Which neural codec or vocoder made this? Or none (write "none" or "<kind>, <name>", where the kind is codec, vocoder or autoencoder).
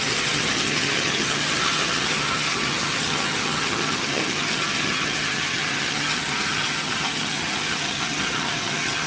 vocoder, HiFi-GAN